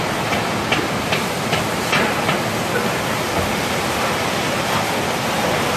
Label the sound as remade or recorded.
recorded